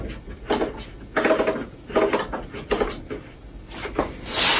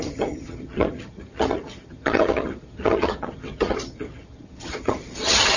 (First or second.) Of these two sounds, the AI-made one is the second